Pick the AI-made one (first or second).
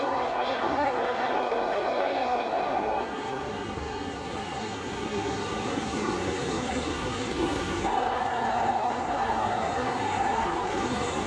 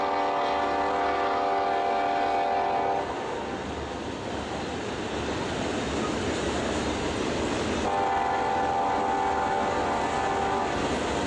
first